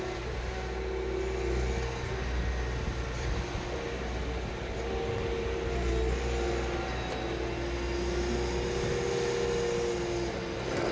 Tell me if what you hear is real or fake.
real